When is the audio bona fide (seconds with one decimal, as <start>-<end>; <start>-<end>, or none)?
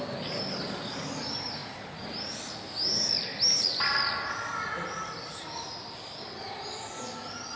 0.0-7.6